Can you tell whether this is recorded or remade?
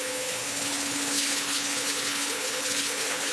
remade